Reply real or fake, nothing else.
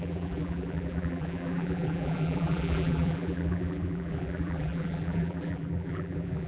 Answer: fake